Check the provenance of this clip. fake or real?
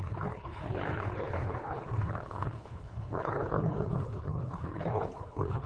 fake